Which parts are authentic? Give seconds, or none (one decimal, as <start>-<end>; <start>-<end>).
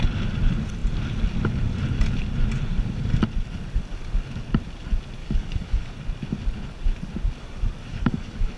0.0-5.2; 5.9-7.9